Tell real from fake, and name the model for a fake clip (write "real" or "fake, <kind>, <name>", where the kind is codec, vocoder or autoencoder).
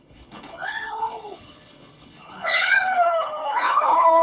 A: fake, codec, HILCodec